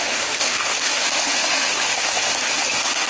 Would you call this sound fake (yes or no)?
yes